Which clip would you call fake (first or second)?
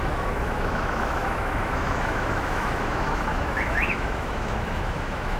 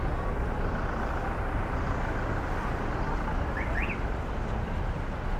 first